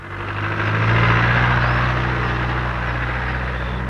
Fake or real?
real